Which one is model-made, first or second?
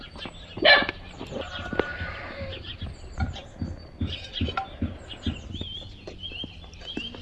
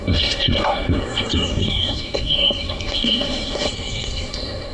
second